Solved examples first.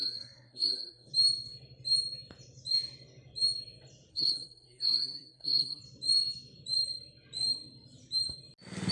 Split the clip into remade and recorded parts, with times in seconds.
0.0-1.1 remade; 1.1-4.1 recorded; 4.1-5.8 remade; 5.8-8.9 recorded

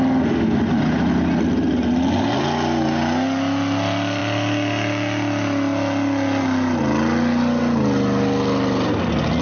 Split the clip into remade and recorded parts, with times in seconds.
0.0-9.4 recorded

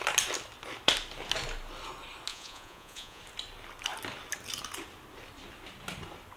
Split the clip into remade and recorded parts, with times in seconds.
0.0-2.3 recorded; 2.3-3.2 remade; 3.2-6.4 recorded

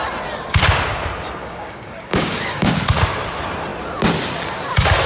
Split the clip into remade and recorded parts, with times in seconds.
0.0-1.4 recorded; 1.4-2.7 remade; 2.7-5.1 recorded